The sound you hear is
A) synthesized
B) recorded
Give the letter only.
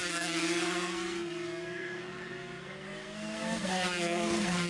A